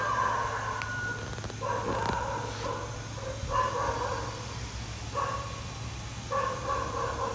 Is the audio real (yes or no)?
yes